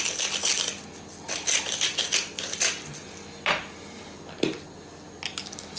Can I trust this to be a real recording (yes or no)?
yes